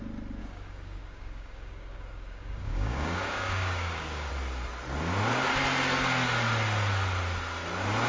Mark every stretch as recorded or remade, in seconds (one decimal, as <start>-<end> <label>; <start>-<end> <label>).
0.0-0.4 recorded; 0.4-4.3 remade; 4.3-8.1 recorded